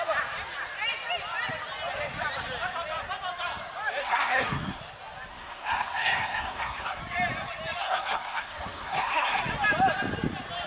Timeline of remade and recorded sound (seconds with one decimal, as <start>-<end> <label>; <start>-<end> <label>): 0.0-4.0 recorded; 4.0-4.8 remade; 4.8-5.3 recorded; 5.3-7.0 remade; 7.0-7.8 recorded; 7.8-9.4 remade; 9.4-10.7 recorded